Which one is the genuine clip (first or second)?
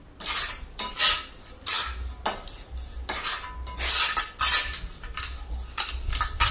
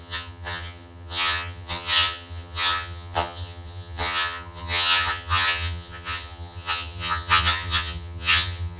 first